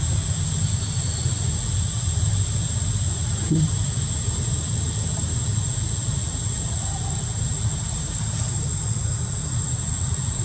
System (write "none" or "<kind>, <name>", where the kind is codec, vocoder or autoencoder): none